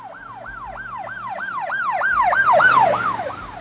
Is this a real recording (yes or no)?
yes